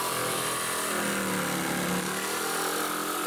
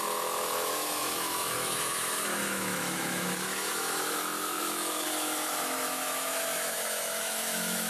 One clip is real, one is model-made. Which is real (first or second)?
first